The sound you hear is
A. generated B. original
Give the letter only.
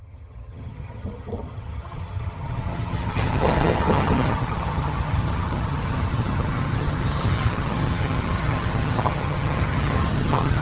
A